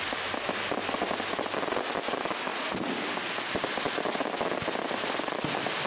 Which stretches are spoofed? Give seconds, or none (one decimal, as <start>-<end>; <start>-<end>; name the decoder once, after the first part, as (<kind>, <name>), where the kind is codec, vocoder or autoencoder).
2.5-3.0 (vocoder, Vocos)